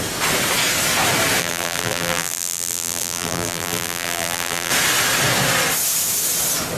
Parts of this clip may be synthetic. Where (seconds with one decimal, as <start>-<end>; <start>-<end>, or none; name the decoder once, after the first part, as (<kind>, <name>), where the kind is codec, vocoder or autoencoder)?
1.4-4.7 (vocoder, BigVGAN v2)